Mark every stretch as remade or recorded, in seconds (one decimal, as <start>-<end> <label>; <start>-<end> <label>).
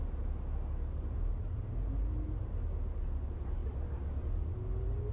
0.0-5.1 recorded